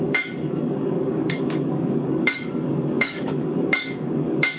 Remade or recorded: remade